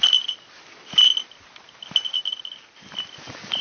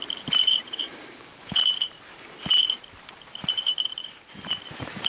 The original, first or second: first